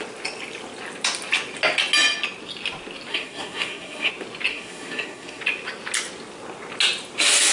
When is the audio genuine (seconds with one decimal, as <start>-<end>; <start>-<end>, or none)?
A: 0.0-3.1; 4.1-4.5; 5.4-7.5